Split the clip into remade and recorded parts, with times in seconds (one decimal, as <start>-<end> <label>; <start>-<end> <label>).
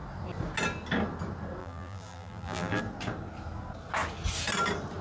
0.0-1.6 recorded; 1.6-2.8 remade; 2.8-5.0 recorded